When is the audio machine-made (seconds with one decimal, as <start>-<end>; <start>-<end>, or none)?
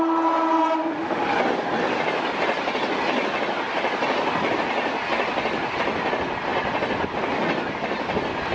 none